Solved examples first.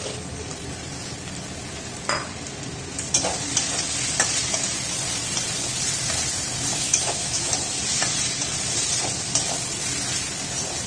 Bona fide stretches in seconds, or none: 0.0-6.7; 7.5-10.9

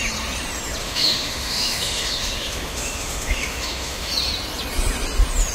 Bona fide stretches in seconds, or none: 0.0-0.8; 4.1-5.5

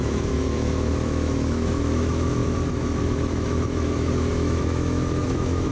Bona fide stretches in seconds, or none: none

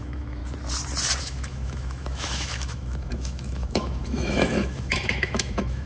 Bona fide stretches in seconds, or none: 0.4-1.2

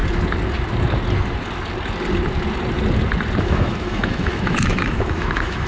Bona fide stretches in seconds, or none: 0.0-3.4